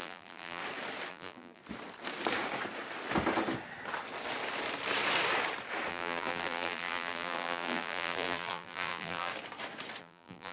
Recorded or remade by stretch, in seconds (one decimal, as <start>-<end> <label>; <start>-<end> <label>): 0.0-0.6 remade; 0.6-1.1 recorded; 1.1-1.6 remade; 1.6-5.9 recorded; 5.9-9.3 remade; 9.3-10.0 recorded; 10.0-10.5 remade